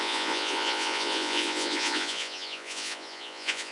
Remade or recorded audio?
remade